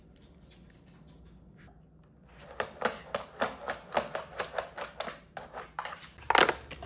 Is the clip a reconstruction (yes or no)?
no